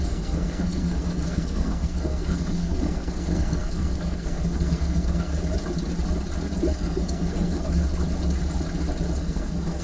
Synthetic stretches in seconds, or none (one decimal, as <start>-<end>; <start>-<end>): 0.0-5.3; 6.7-7.8; 9.2-9.8